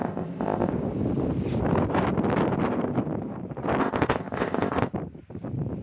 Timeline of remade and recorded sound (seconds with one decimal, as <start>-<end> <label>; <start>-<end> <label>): 0.0-0.7 remade; 0.7-3.8 recorded; 3.8-4.9 remade; 4.9-5.8 recorded